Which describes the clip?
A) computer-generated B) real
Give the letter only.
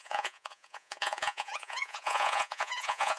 A